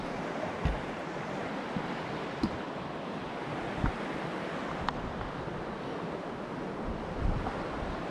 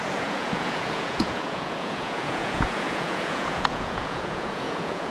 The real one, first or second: first